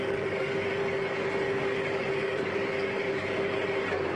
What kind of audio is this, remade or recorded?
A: remade